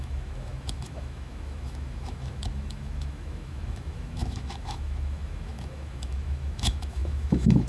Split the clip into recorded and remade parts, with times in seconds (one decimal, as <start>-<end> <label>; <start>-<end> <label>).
0.0-7.7 remade